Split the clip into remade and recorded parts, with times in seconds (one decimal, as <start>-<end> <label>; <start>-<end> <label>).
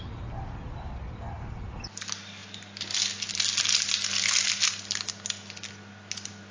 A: 0.0-6.5 recorded